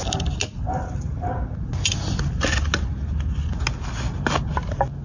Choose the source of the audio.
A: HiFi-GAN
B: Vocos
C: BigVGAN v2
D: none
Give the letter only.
D